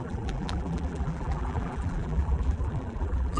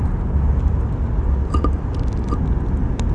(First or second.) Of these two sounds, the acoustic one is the second